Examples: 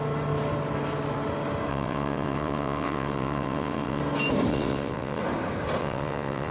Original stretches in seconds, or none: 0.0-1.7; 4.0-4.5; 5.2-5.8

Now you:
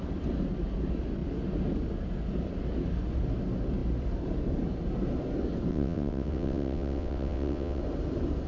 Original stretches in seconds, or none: 0.0-5.7; 7.8-8.5

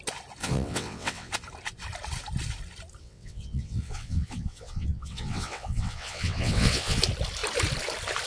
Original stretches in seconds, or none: 0.0-0.4; 1.3-3.0; 7.0-8.3

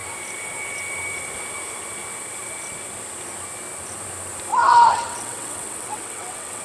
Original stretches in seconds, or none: 0.0-4.5

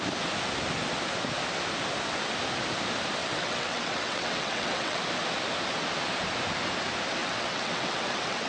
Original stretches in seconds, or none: 0.0-3.2; 5.0-7.2